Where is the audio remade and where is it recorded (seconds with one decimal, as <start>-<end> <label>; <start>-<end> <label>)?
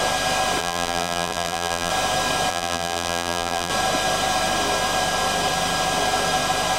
0.0-0.6 recorded; 0.6-1.9 remade; 1.9-2.5 recorded; 2.5-3.7 remade; 3.7-6.8 recorded